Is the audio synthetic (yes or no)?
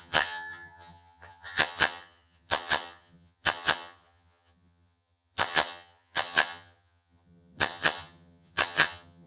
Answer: yes